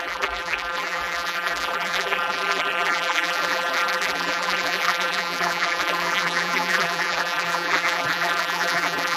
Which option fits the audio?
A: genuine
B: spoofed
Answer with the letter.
B